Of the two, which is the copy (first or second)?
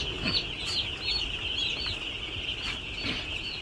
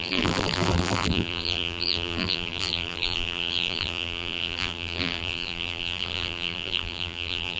second